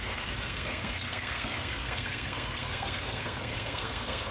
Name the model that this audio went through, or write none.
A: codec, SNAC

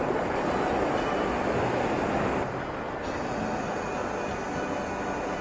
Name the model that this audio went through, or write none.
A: none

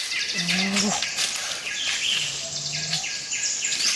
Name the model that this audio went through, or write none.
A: none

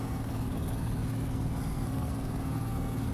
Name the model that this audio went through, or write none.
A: codec, SNAC